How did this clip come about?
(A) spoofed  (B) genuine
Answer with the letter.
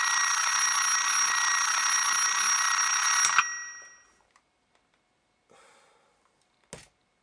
B